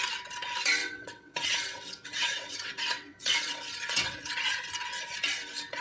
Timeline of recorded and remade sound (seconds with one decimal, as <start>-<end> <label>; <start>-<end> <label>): 0.0-0.8 recorded; 0.8-4.3 remade; 4.3-5.8 recorded